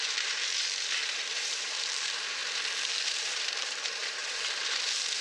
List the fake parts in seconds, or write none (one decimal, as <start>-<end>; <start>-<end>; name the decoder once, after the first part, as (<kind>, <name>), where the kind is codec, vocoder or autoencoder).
0.0-2.4 (vocoder, BigVGAN v2); 3.1-5.2